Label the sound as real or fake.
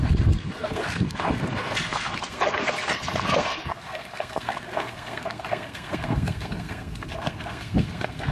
fake